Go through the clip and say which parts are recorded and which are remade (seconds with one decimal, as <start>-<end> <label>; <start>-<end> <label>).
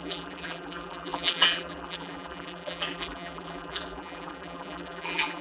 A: 0.0-5.4 remade